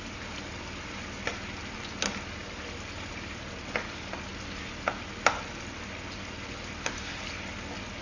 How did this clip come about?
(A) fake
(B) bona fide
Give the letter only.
B